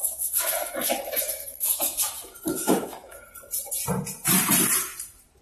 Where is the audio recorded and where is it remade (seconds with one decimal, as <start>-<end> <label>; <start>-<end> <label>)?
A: 0.0-3.2 remade; 3.2-5.4 recorded